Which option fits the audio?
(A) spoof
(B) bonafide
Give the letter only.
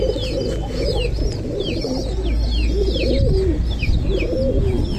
B